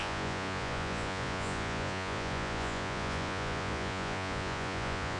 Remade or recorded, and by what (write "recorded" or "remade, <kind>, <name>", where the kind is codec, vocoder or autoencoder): remade, vocoder, Vocos